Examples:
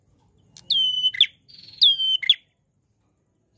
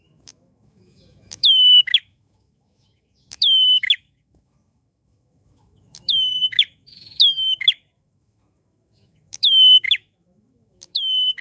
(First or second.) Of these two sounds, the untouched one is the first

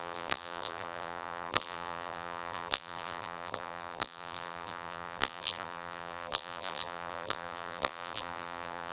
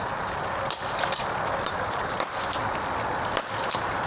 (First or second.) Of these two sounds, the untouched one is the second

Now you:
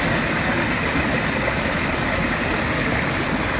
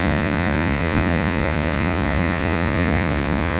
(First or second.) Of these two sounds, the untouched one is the first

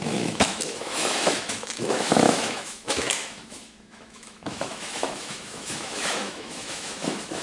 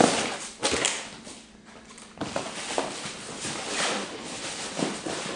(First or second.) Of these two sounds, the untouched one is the second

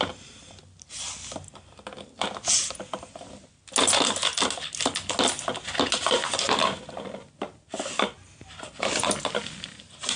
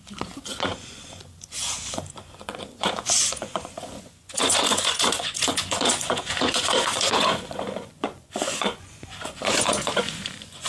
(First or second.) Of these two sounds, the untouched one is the first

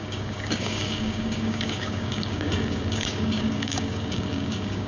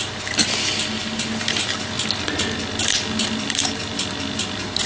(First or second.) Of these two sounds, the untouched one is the second